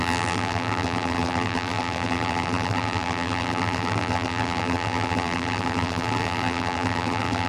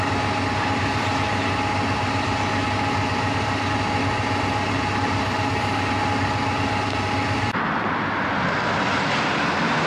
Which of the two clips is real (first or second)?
second